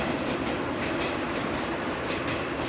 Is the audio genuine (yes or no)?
yes